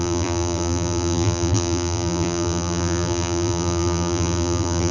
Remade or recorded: remade